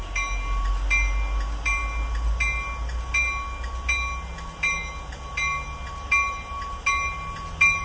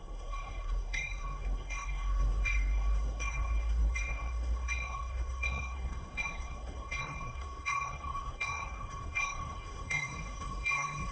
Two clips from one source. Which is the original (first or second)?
first